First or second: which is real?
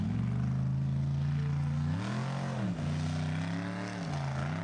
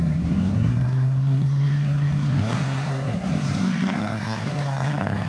first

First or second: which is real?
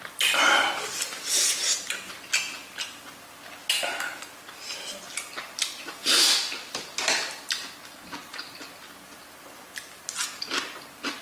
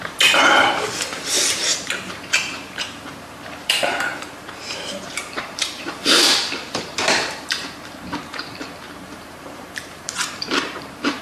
first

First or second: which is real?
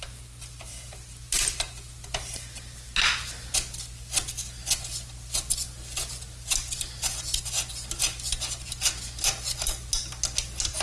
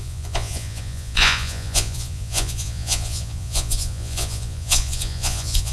first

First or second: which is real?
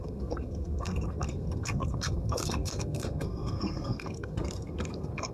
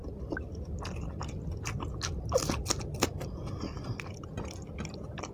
second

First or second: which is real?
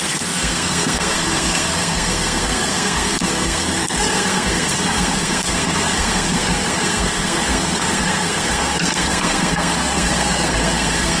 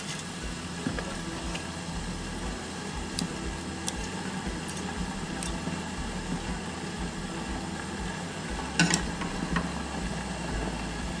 second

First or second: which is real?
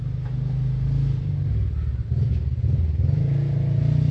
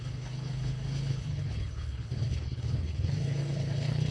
first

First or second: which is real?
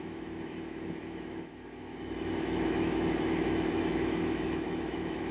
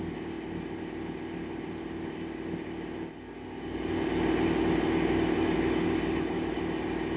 second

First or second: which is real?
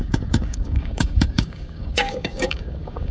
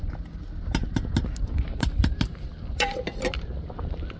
second